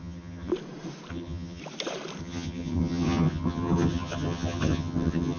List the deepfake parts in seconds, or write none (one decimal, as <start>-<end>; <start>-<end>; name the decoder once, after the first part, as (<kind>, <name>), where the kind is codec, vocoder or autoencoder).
0.0-0.5 (vocoder, HiFi-GAN); 1.1-1.6; 2.2-5.4